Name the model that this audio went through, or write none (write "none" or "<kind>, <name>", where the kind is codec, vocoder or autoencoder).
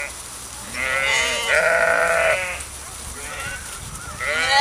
none